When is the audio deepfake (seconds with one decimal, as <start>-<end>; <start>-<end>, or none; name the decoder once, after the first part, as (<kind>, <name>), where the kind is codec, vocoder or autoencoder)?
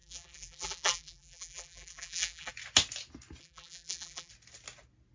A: 0.0-2.5 (vocoder, BigVGAN v2); 3.4-4.3